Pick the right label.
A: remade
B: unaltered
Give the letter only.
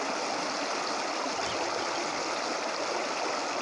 B